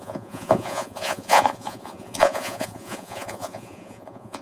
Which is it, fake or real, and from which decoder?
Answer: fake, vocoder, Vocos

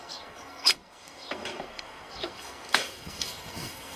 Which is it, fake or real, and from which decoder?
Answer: fake, codec, SNAC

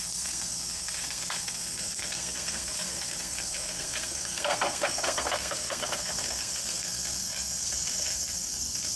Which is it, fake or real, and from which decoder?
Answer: fake, codec, SNAC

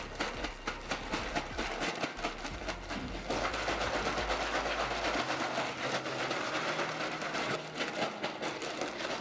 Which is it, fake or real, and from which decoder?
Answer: real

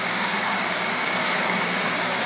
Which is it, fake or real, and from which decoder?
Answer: fake, codec, DAC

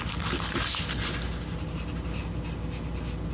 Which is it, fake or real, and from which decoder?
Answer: real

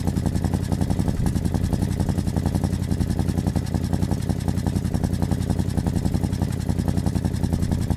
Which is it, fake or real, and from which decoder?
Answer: real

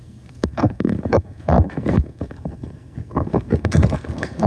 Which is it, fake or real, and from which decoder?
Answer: fake, codec, SNAC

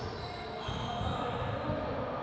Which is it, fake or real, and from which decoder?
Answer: real